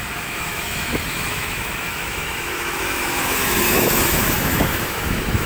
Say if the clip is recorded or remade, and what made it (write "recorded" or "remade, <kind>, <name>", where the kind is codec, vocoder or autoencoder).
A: remade, autoencoder, DAC-VAE